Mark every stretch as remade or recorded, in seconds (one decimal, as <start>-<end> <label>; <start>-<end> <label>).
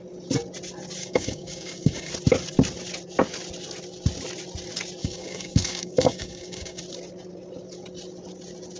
0.0-1.0 recorded; 1.0-2.1 remade; 2.1-5.0 recorded; 5.0-6.8 remade; 6.8-8.8 recorded